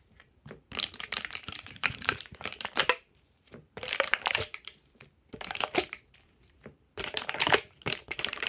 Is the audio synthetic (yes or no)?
yes